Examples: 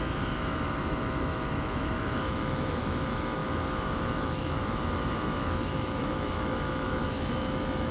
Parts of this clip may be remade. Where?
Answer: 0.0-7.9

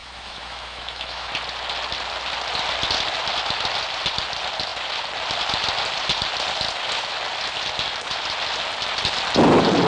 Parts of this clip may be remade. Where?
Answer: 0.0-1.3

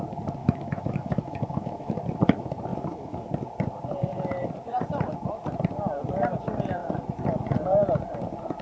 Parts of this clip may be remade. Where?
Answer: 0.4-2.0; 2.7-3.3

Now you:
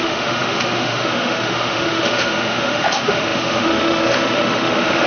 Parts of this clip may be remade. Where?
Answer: 0.0-5.1